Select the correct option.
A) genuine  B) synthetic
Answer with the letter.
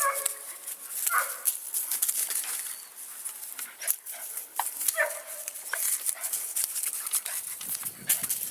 A